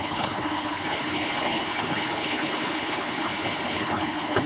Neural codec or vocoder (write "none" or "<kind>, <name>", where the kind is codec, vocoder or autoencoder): codec, HILCodec